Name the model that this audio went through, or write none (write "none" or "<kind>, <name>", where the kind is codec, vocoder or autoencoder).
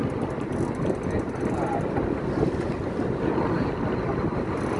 none